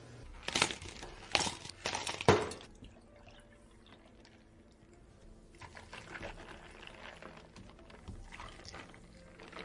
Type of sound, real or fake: real